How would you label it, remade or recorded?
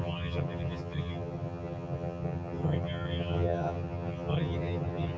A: remade